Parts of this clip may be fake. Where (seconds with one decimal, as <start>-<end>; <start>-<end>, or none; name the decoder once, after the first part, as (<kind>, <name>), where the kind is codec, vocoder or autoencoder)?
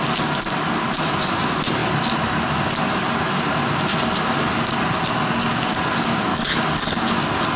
6.3-7.1 (codec, DAC)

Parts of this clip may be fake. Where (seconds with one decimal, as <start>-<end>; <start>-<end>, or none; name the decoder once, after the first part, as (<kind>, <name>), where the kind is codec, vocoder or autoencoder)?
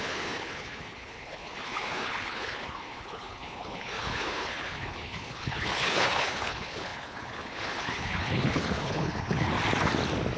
0.0-9.5 (codec, HILCodec)